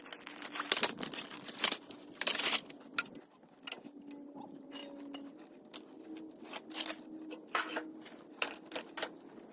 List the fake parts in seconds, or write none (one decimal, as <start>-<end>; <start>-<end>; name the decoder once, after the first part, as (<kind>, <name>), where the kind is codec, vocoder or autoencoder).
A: none